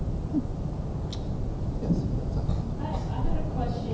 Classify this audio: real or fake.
real